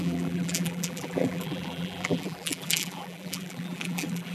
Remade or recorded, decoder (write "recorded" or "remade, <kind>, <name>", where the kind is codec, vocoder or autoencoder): remade, vocoder, BigVGAN v2